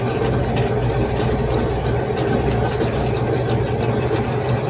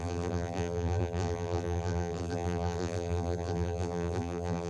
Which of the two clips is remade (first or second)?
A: second